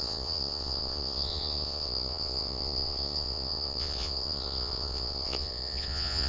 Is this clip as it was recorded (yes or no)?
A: no